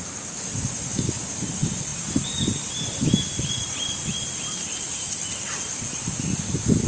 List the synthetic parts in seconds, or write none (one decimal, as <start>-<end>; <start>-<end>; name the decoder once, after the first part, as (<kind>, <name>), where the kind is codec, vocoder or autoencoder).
none